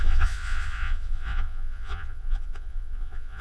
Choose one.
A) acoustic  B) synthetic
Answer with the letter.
B